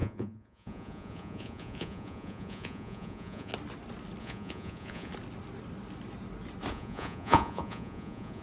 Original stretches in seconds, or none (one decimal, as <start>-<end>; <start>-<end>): 3.5-4.2; 5.1-6.7